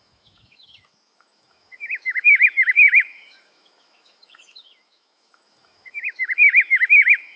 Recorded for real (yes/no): no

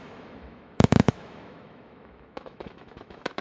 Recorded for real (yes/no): no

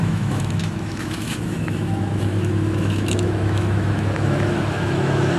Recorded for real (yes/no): no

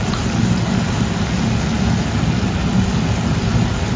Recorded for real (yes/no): yes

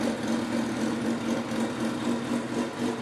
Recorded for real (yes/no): yes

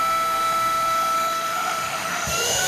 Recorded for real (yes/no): no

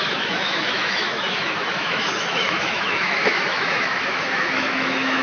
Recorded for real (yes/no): no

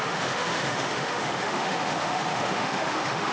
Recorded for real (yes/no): no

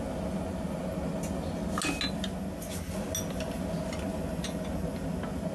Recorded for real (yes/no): yes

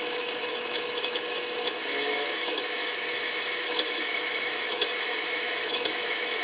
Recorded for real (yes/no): no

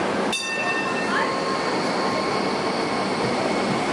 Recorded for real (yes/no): yes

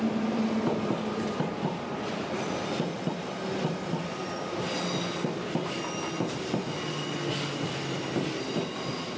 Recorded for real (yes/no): yes